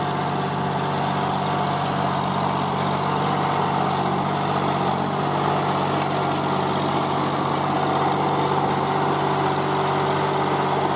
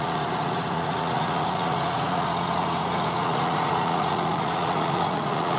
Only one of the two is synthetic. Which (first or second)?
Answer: second